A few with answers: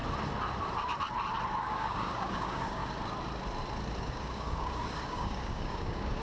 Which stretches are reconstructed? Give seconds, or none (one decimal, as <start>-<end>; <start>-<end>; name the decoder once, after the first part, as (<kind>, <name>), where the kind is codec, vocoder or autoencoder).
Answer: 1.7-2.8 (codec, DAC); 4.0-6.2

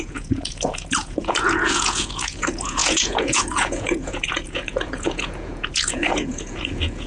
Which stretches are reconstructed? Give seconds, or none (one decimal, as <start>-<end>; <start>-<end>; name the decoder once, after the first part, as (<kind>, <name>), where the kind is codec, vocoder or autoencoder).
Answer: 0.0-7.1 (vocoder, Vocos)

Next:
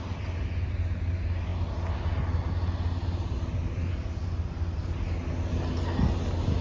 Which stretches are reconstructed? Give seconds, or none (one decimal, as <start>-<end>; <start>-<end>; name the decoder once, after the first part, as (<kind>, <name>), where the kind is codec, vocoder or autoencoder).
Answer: none

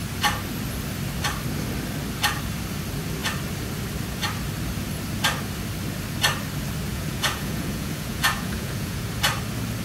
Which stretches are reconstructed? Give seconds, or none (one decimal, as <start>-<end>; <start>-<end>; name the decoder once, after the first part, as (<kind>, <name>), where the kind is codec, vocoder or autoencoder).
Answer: 6.9-9.0 (vocoder, Vocos)

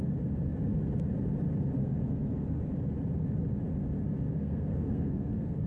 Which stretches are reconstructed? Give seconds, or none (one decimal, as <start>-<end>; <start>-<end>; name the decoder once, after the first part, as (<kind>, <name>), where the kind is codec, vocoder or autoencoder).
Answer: 1.8-2.7 (codec, SNAC); 4.3-5.7

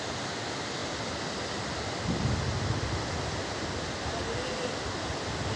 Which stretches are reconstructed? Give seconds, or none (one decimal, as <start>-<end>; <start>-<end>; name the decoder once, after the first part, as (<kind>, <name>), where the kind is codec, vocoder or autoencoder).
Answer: none